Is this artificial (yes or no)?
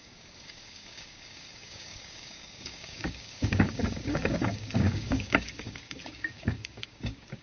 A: yes